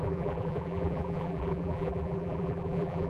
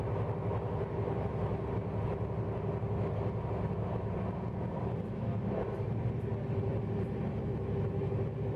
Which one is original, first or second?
second